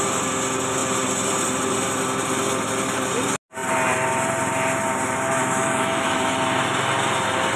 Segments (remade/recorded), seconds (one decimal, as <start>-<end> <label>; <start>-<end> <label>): 0.0-5.4 recorded; 5.4-6.3 remade; 6.3-7.6 recorded